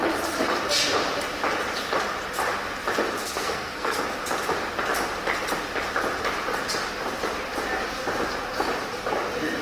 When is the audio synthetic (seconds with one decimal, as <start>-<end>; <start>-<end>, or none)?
3.2-4.0